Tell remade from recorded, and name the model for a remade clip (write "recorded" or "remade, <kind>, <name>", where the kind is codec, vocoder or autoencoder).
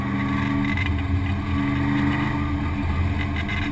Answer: recorded